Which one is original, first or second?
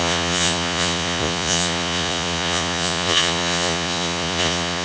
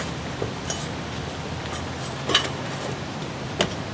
second